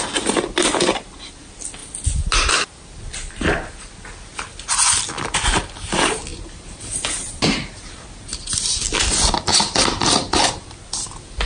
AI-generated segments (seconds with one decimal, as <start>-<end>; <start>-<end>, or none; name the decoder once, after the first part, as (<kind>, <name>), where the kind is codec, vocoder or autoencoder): 6.3-7.9 (vocoder, BigVGAN v2)